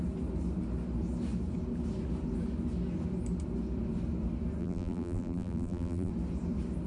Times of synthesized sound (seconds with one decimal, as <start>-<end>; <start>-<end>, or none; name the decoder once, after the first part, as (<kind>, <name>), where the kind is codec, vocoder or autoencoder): 4.6-6.1 (vocoder, BigVGAN v2)